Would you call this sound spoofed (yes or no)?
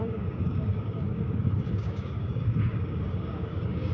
yes